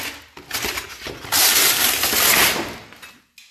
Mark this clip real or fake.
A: real